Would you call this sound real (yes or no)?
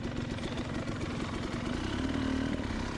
yes